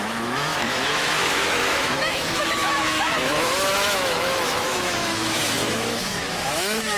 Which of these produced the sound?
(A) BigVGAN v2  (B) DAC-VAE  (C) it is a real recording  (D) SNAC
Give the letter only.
B